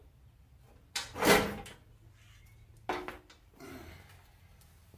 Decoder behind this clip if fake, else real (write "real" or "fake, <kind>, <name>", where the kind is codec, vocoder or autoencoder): real